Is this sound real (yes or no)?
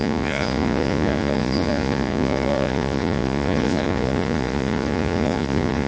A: no